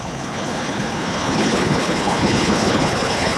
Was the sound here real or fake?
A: fake